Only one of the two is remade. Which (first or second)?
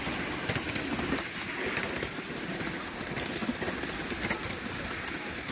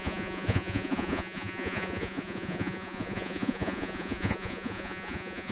second